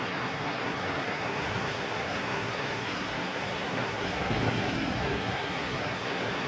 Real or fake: fake